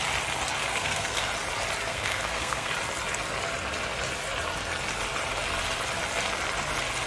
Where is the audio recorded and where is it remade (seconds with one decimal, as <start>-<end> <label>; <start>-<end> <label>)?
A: 0.0-0.7 recorded; 0.7-1.3 remade; 1.3-1.9 recorded; 1.9-2.7 remade; 2.7-7.1 recorded